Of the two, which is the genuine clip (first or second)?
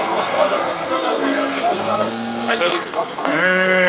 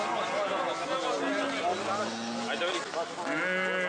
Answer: second